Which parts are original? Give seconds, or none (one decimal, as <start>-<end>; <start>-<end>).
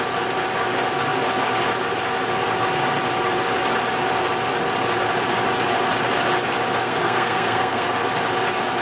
0.0-6.8; 7.9-8.8